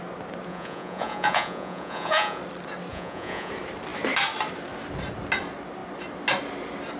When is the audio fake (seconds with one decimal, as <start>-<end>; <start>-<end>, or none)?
0.5-2.4; 2.9-3.5

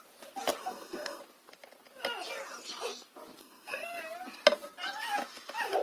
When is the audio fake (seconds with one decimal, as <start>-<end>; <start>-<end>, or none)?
0.6-1.2; 3.4-4.0

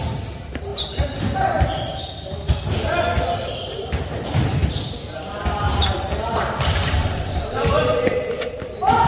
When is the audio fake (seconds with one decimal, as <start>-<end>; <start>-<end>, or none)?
0.0-1.9; 3.8-9.1

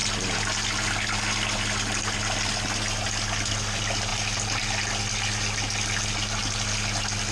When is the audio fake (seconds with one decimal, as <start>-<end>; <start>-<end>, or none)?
none

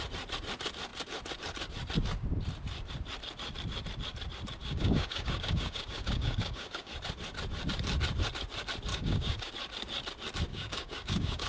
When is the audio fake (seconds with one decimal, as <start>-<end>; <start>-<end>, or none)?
4.6-6.9; 8.9-9.5; 10.5-11.5

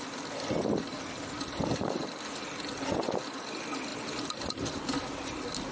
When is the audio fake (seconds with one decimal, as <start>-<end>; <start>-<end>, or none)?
none

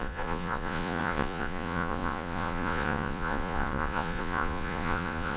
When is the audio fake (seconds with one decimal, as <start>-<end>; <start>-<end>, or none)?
0.0-5.4

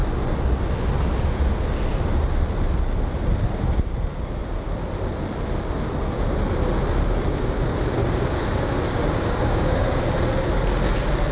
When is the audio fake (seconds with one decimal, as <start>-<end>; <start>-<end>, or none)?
8.0-10.0